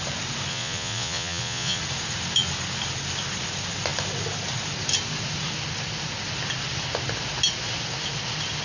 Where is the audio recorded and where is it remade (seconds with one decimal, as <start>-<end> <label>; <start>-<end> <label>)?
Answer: 0.0-0.5 recorded; 0.5-1.8 remade; 1.8-8.6 recorded